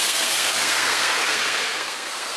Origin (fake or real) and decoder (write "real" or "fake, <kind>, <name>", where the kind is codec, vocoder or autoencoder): fake, codec, SNAC